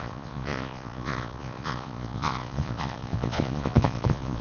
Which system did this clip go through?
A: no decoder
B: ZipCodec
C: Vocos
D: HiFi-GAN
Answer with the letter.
C